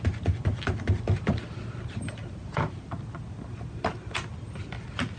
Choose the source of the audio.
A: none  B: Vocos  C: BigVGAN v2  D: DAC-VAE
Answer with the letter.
A